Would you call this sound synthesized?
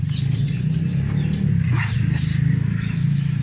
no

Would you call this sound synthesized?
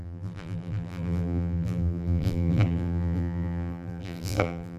yes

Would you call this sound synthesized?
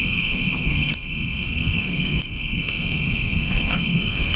yes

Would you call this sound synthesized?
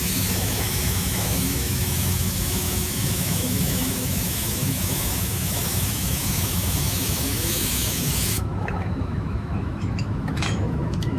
yes